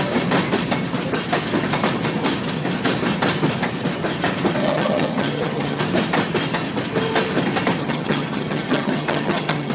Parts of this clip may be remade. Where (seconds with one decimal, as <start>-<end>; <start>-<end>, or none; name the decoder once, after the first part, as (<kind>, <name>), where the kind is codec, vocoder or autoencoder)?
4.6-5.8 (vocoder, HiFi-GAN); 7.8-9.7